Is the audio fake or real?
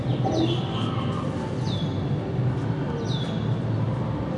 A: real